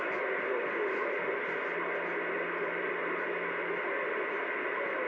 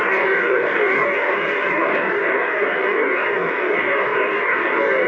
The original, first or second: first